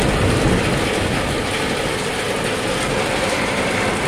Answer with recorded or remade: recorded